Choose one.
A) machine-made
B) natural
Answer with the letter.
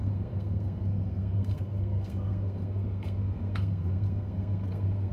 A